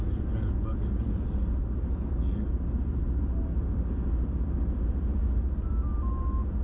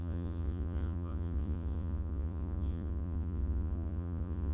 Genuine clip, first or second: first